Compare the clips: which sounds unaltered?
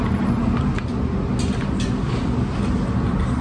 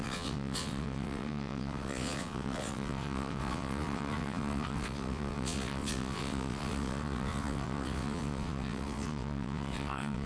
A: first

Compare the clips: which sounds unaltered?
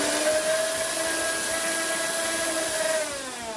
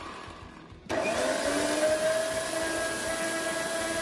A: second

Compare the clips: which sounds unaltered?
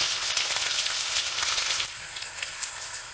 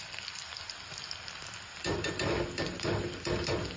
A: second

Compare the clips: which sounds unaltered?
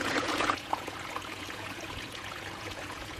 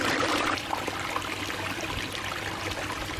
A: second